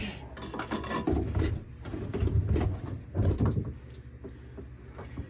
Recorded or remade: recorded